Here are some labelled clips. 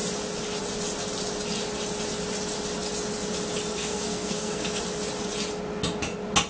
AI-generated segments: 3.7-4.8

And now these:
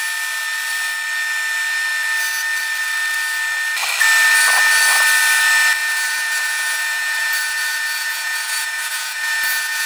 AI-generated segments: 5.8-9.9

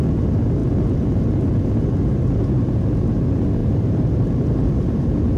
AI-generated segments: 3.6-5.4

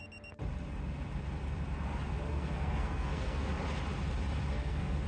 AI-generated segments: 2.3-3.5; 4.5-5.1

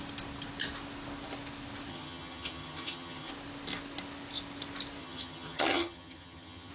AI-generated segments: 1.9-3.3; 5.0-6.7

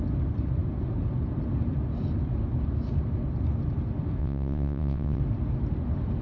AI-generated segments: 4.2-5.2